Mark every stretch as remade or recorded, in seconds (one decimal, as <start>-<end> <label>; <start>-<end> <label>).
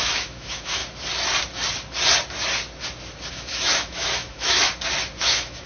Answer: 0.0-0.8 remade; 0.8-3.3 recorded; 3.3-4.6 remade; 4.6-5.2 recorded; 5.2-5.7 remade